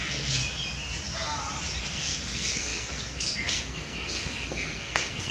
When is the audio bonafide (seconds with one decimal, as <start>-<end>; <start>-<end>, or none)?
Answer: 0.4-1.8